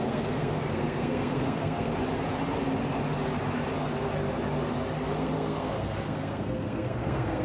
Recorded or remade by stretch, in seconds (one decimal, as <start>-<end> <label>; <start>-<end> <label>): 0.0-1.9 remade; 1.9-5.1 recorded; 5.1-7.4 remade